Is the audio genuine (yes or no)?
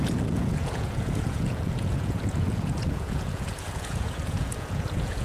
no